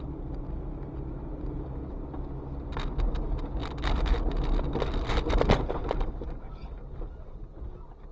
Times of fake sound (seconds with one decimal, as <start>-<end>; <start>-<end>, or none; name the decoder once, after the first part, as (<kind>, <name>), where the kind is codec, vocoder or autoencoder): none